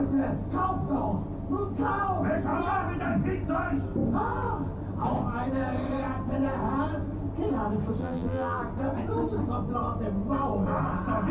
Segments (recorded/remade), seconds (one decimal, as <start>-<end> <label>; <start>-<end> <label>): 0.0-8.0 recorded; 8.0-8.6 remade; 8.6-11.3 recorded